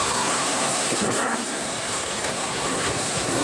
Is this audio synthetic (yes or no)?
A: yes